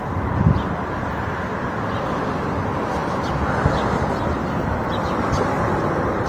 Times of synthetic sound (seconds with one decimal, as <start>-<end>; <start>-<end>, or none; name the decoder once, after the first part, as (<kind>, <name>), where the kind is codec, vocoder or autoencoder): none